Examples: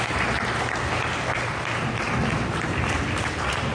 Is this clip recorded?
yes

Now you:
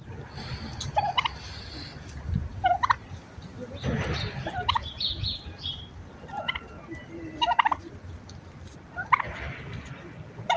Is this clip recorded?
yes